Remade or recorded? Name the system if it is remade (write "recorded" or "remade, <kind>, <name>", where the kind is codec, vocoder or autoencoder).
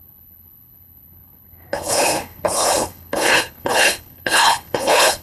remade, codec, HILCodec